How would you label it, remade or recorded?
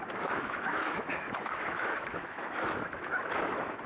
remade